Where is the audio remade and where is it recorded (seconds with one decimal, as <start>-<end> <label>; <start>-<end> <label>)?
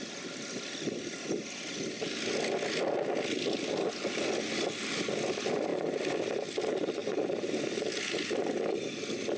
0.0-9.4 recorded